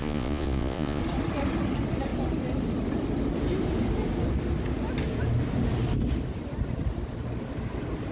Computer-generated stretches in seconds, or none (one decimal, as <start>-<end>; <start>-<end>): 0.0-1.0